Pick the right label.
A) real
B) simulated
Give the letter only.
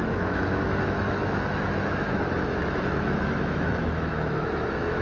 B